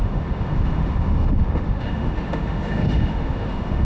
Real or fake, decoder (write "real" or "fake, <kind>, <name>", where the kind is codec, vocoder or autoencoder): fake, autoencoder, DAC-VAE